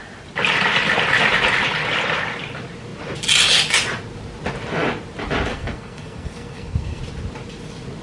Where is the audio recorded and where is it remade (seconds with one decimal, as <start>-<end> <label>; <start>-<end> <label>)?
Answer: 0.0-5.5 recorded; 5.5-7.0 remade; 7.0-8.0 recorded